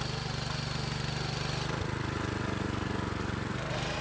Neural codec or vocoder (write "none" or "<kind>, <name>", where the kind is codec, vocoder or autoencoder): none